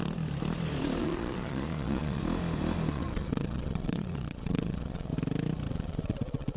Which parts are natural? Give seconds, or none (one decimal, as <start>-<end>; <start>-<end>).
0.0-1.0; 2.2-2.9; 5.1-5.7